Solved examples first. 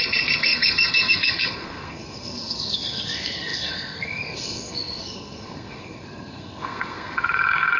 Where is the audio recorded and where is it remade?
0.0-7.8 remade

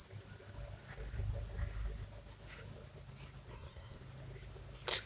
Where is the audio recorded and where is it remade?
0.0-3.5 recorded; 3.5-4.0 remade; 4.0-5.1 recorded

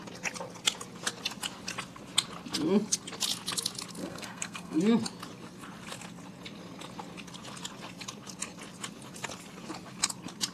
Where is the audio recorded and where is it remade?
0.0-4.0 recorded; 4.0-4.8 remade; 4.8-10.5 recorded

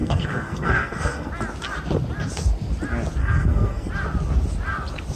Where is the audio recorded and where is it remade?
0.0-1.3 remade; 1.3-3.2 recorded; 3.2-3.9 remade; 3.9-5.2 recorded